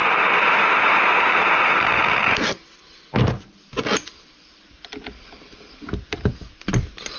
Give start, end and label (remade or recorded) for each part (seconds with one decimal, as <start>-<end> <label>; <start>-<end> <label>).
0.0-7.2 recorded